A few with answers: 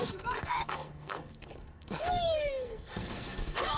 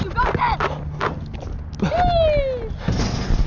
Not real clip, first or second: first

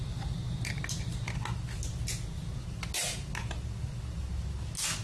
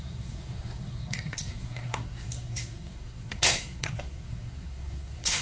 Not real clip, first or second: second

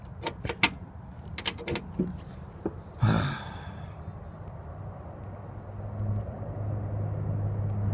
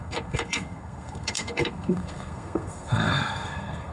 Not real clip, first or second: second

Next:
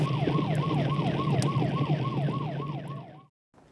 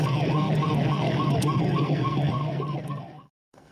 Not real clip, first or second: second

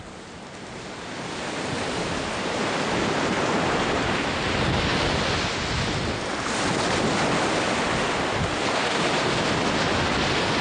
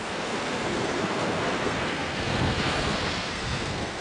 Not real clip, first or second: second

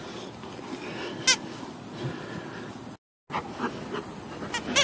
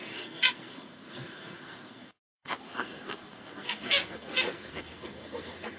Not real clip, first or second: second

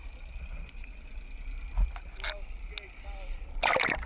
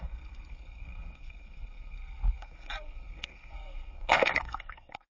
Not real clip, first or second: second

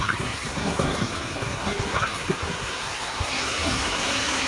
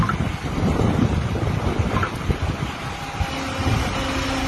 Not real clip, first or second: first